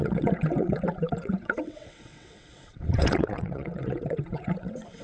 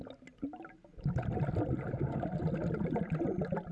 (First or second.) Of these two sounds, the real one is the second